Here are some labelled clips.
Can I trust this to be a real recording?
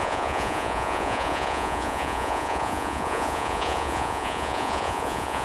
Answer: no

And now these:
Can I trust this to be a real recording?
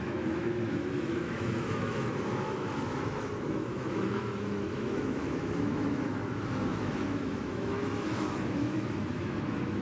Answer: no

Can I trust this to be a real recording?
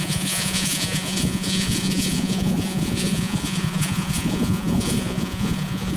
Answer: no